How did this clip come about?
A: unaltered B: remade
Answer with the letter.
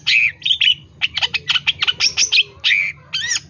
A